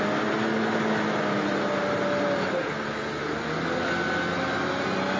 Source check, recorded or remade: recorded